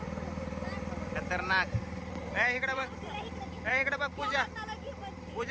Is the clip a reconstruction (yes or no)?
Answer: yes